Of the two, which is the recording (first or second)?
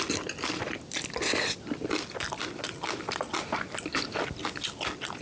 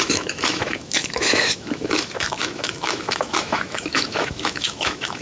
first